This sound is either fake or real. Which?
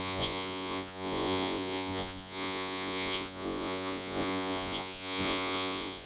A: fake